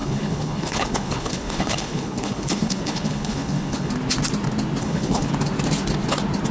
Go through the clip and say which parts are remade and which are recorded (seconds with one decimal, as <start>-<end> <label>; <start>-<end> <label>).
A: 0.0-3.9 remade; 3.9-4.8 recorded; 4.8-5.3 remade; 5.3-6.5 recorded